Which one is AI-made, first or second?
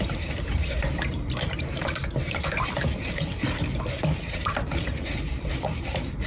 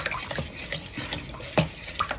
first